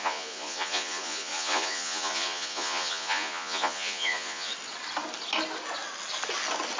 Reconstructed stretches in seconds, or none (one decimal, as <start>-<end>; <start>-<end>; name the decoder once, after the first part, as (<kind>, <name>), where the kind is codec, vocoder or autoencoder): 0.0-4.5 (vocoder, Vocos)